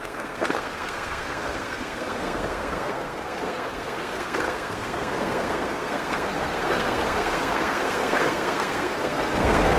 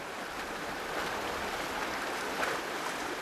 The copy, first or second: first